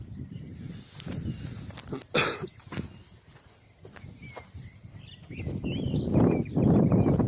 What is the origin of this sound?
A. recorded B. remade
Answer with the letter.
A